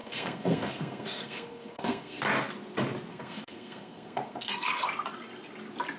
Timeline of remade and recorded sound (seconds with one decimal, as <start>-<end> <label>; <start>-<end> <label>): 0.0-2.2 remade; 2.2-3.1 recorded; 3.1-4.9 remade; 4.9-6.0 recorded